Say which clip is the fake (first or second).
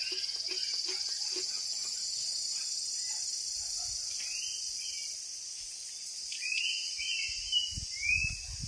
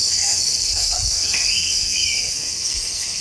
second